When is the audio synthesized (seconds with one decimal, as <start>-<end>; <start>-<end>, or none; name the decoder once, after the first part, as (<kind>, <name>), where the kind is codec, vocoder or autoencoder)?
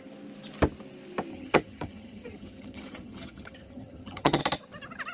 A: 1.3-4.4 (vocoder, HiFi-GAN)